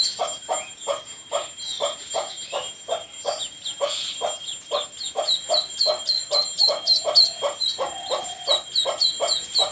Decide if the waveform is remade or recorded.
recorded